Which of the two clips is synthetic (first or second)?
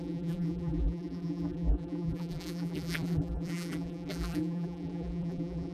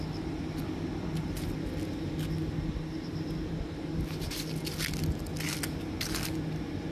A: first